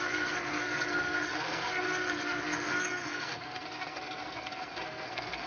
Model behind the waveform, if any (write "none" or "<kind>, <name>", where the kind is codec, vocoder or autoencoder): codec, SNAC